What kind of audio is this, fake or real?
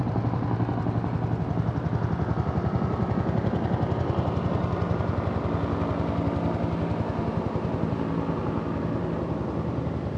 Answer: real